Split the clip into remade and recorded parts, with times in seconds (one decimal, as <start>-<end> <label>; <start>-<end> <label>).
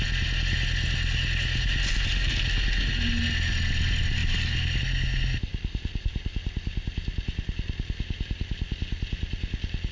0.0-5.5 recorded; 5.5-9.9 remade